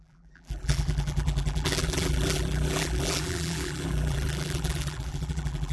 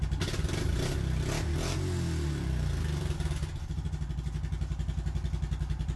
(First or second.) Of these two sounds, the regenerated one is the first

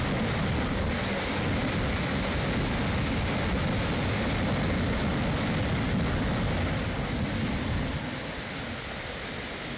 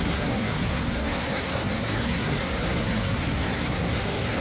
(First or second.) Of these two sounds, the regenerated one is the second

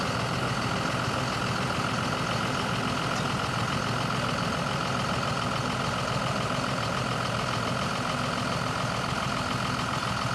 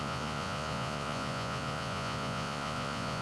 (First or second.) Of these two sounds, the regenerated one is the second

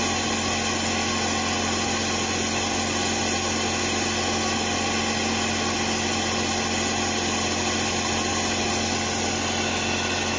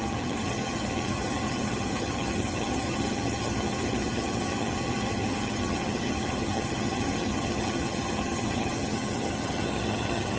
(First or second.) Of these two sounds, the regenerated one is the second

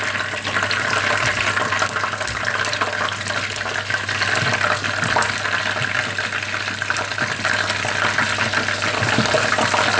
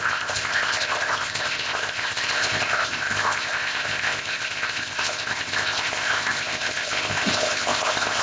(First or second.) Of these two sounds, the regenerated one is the second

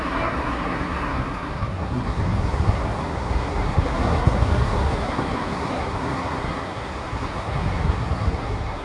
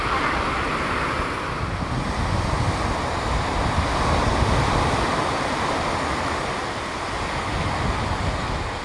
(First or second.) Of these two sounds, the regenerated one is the first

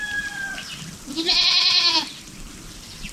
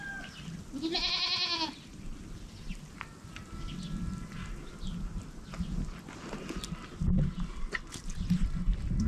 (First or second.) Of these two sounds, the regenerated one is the first